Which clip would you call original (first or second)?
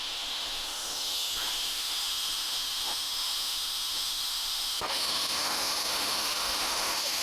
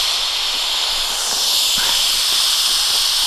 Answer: second